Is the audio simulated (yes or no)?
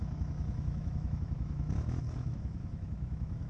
yes